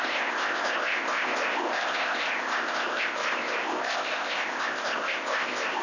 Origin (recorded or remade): remade